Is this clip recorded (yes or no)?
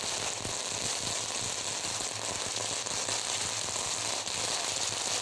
yes